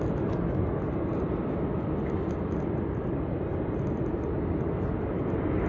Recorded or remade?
recorded